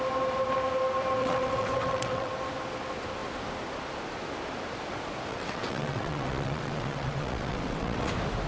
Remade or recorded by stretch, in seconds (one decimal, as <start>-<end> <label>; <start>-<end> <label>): 0.0-1.2 recorded; 1.2-2.3 remade; 2.3-5.3 recorded; 5.3-8.1 remade; 8.1-8.5 recorded